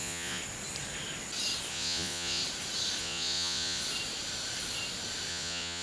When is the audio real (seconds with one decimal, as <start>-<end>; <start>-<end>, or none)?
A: 0.4-1.7; 2.4-3.0; 3.8-5.3